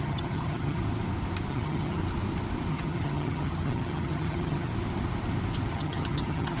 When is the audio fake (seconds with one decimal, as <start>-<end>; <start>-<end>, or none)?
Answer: 0.0-0.8; 1.5-2.0; 2.7-4.7; 5.7-6.6